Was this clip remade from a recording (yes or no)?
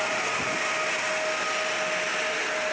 no